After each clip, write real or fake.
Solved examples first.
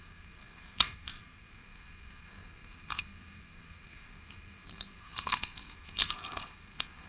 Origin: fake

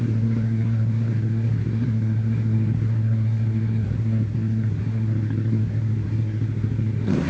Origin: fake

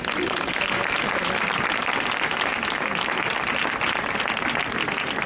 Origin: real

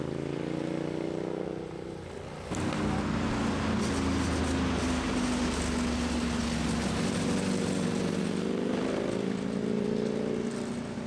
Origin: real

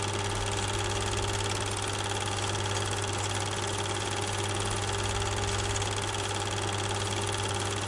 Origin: real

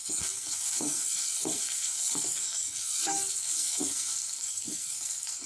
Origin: fake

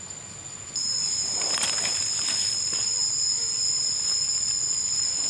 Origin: real